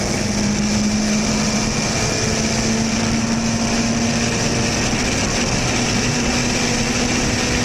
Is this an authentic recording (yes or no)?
yes